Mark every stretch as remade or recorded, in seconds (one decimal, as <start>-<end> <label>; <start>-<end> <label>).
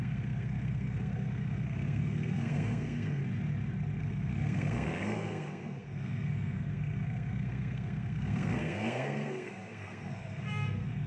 0.0-3.2 remade; 3.2-4.0 recorded; 4.0-11.1 remade